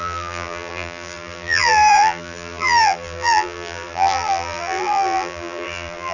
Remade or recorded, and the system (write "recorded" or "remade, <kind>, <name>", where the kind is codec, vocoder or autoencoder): remade, vocoder, BigVGAN v2